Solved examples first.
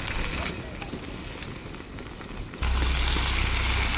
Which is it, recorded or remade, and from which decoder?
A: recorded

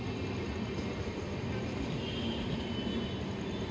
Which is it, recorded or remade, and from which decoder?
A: recorded